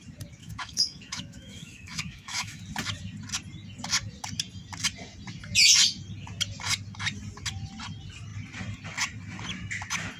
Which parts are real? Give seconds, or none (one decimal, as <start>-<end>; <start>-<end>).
0.0-0.4; 2.6-10.2